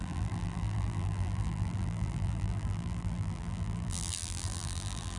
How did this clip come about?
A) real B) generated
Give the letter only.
B